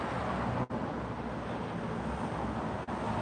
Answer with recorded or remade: recorded